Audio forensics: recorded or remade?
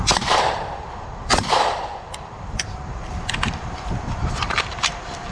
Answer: remade